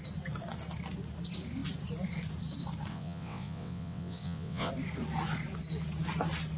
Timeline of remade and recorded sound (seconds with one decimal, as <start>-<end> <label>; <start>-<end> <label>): 0.0-2.9 recorded; 2.9-4.7 remade; 4.7-6.6 recorded